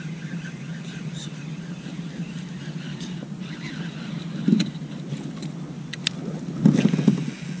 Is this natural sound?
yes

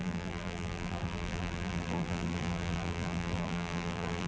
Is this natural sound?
no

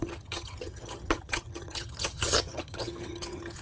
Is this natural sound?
no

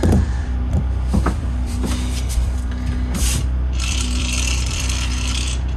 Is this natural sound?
no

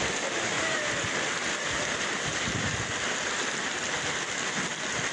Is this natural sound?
yes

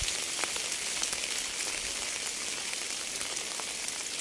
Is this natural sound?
yes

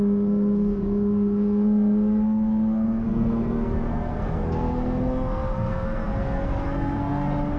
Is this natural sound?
no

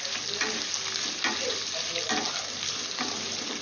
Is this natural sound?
yes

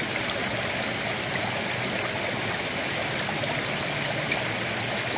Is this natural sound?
yes